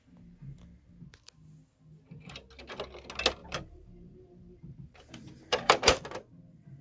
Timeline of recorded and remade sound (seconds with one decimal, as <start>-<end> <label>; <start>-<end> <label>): 0.0-3.4 recorded; 3.4-6.0 remade; 6.0-6.8 recorded